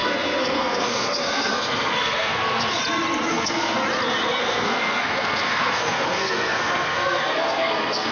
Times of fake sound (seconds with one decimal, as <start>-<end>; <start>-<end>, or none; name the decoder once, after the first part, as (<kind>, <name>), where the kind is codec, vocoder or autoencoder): 0.0-2.8 (codec, SNAC); 3.3-3.8; 4.4-8.1